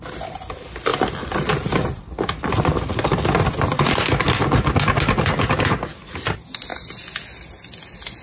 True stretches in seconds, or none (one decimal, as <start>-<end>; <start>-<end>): 0.0-8.2